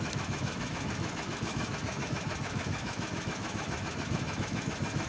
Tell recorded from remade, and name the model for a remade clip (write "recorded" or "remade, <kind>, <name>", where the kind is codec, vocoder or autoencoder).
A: remade, autoencoder, DAC-VAE